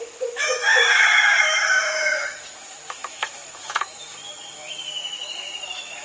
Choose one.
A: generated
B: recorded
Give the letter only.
A